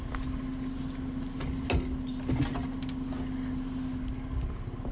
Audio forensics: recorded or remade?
recorded